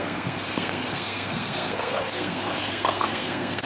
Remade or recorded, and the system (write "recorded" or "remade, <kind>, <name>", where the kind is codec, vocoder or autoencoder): remade, codec, SNAC